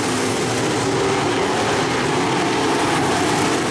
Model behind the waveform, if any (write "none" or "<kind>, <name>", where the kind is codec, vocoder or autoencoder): none